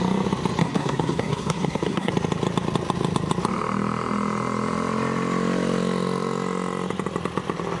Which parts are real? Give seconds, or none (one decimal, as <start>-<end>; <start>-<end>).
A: 0.0-0.6; 2.1-7.8